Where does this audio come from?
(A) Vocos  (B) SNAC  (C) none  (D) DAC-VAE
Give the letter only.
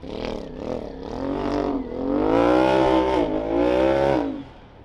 C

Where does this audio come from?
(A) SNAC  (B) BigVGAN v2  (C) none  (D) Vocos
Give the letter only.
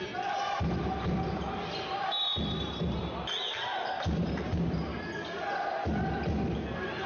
C